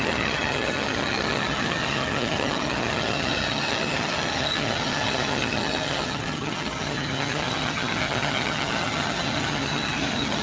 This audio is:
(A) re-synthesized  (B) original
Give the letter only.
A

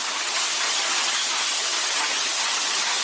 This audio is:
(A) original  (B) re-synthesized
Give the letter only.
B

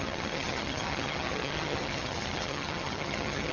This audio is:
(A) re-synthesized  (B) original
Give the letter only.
A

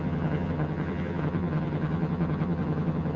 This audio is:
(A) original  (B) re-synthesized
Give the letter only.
B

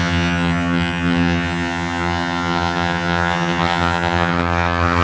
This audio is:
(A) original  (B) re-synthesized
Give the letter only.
B